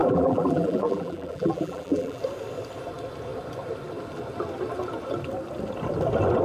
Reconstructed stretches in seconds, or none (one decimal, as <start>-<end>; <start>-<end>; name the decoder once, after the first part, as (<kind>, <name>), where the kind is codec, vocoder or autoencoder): 0.0-2.2 (vocoder, BigVGAN v2)